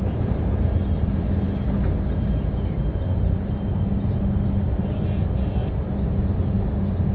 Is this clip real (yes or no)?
yes